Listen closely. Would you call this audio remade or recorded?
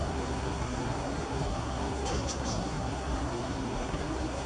remade